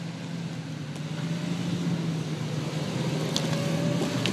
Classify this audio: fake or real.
real